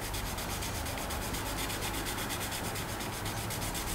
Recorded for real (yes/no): yes